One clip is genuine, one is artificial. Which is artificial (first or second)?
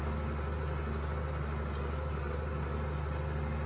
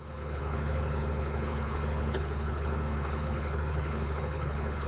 second